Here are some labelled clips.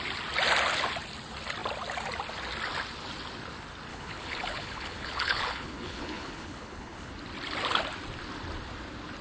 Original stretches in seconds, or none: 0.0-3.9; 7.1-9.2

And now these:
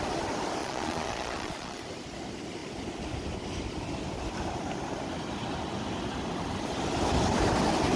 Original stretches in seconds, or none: 0.0-0.6; 1.8-8.0

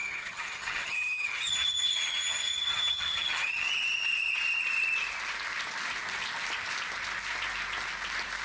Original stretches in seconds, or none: 3.7-8.4

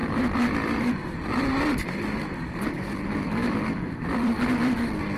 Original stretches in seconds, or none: 1.5-3.4; 4.4-5.2

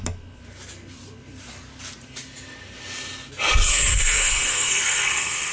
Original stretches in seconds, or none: 0.0-3.7